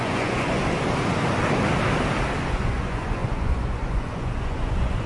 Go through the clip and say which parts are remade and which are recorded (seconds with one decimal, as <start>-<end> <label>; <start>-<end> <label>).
0.0-0.6 remade; 0.6-2.4 recorded; 2.4-5.1 remade